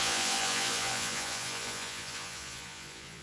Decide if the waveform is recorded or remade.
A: remade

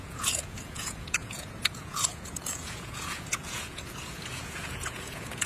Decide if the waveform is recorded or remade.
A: remade